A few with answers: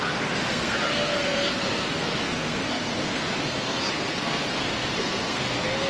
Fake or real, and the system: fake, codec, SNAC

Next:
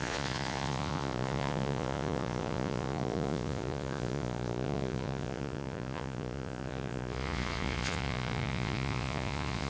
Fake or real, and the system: fake, vocoder, Vocos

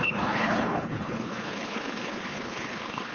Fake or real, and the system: fake, codec, HILCodec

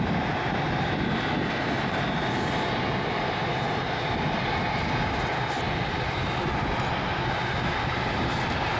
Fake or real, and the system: real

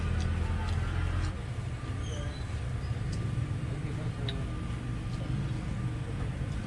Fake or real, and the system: real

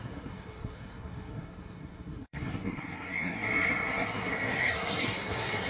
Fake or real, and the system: fake, codec, SNAC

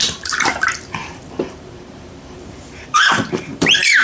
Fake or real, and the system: fake, vocoder, BigVGAN v2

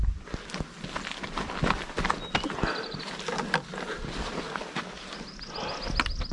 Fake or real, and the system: real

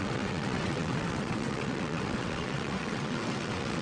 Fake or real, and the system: fake, vocoder, WaveNeXt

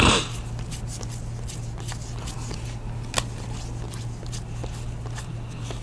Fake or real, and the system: real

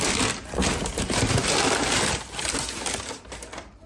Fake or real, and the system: real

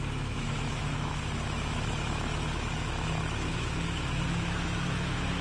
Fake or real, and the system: fake, autoencoder, DAC-VAE